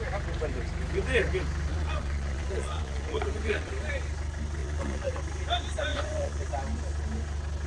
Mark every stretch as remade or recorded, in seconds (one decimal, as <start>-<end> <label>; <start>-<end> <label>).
0.0-1.7 recorded; 1.7-3.7 remade; 3.7-4.6 recorded; 4.6-5.1 remade; 5.1-5.9 recorded; 5.9-6.4 remade; 6.4-7.7 recorded